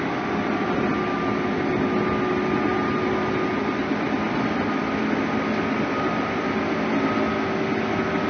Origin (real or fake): real